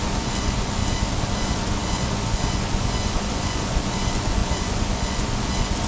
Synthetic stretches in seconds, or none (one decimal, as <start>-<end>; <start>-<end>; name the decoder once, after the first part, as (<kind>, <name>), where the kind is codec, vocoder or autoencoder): 0.0-0.8 (vocoder, Vocos); 1.4-5.9